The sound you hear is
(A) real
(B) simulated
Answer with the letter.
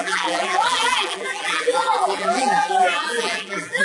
B